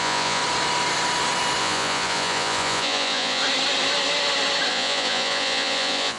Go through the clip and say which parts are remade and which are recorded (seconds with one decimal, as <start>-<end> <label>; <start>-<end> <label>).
0.0-0.4 remade; 0.4-1.6 recorded; 1.6-3.4 remade; 3.4-4.7 recorded; 4.7-6.2 remade